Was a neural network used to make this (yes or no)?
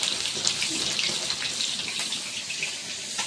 yes